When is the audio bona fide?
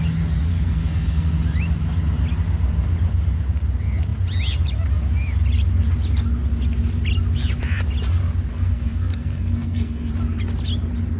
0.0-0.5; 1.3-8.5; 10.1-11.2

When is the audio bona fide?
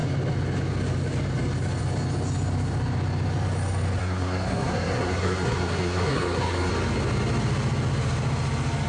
0.0-4.0; 6.7-8.9